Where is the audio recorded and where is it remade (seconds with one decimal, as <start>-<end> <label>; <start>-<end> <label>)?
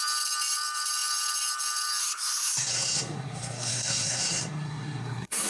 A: 0.0-2.0 recorded; 2.0-5.5 remade